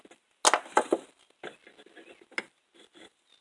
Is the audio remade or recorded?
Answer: recorded